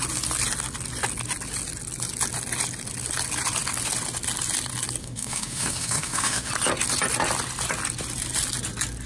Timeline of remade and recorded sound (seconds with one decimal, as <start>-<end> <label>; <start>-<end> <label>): 0.0-5.0 recorded; 5.0-6.5 remade; 6.5-9.1 recorded